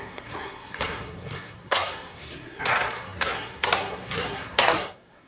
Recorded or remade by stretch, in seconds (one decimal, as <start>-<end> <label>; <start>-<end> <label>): 0.0-5.3 remade